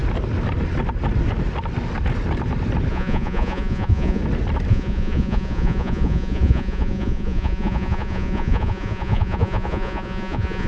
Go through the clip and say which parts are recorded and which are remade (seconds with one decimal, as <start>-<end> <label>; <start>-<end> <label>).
0.0-2.9 recorded; 2.9-4.2 remade; 4.2-4.7 recorded; 4.7-10.7 remade